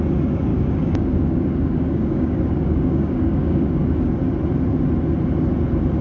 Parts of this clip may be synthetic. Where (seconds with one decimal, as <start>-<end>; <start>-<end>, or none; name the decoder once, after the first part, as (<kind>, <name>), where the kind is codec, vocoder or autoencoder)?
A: 0.5-4.1 (codec, DAC)